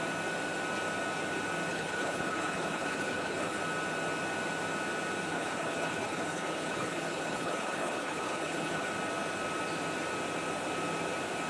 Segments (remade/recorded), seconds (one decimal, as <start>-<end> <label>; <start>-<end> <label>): 0.0-1.7 recorded; 1.7-3.6 remade; 3.6-5.3 recorded; 5.3-8.9 remade; 8.9-11.5 recorded